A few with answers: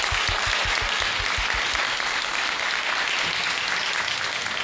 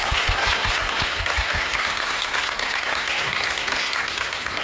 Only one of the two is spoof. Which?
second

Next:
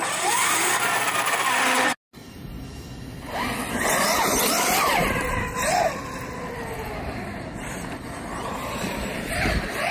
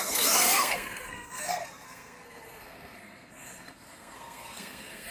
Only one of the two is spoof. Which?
second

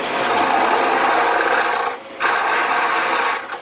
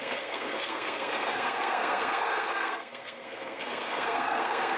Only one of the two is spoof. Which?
second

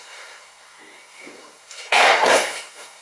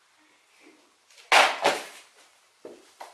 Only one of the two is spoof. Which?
first